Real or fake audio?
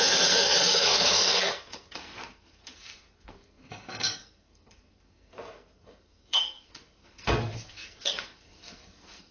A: fake